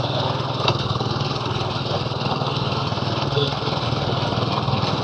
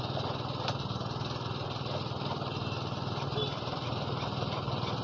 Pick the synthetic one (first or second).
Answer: first